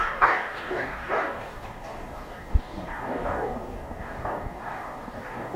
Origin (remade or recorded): remade